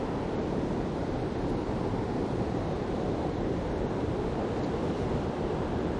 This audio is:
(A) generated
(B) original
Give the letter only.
A